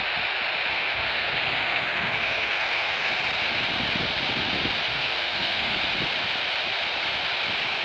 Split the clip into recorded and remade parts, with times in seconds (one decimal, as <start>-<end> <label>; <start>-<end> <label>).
0.0-0.7 recorded; 0.7-3.1 remade; 3.1-4.9 recorded; 4.9-5.8 remade; 5.8-7.8 recorded